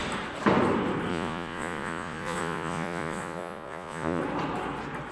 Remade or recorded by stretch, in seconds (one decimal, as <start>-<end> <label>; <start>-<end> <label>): 0.0-1.1 recorded; 1.1-4.2 remade; 4.2-5.1 recorded